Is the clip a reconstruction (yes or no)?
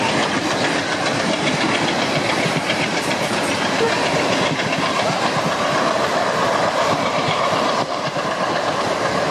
yes